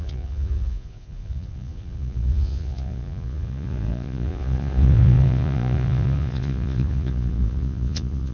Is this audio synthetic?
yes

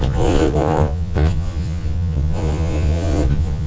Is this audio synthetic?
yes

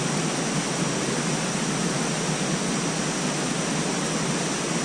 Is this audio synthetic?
no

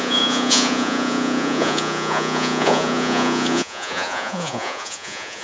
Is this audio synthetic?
yes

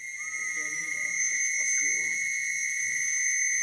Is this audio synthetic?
no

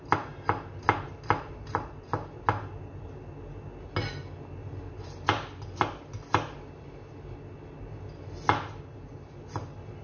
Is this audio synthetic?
no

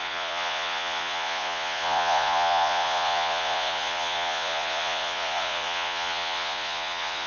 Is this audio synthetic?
yes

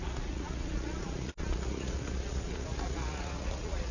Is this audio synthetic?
yes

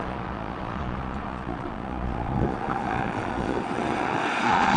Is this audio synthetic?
yes